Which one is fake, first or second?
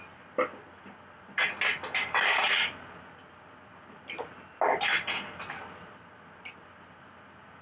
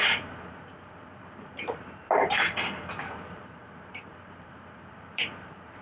second